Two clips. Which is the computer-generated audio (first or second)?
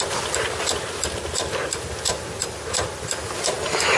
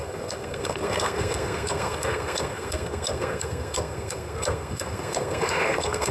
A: second